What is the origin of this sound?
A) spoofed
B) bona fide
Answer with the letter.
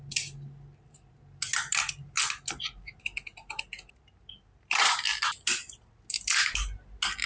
B